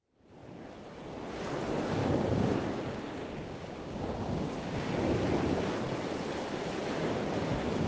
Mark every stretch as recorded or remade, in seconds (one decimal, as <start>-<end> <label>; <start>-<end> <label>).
0.0-2.0 recorded; 2.0-4.9 remade; 4.9-7.9 recorded